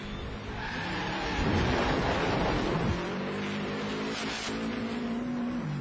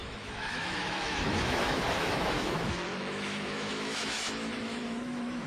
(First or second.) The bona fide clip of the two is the first